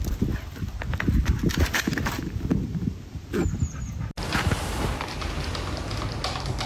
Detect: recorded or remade recorded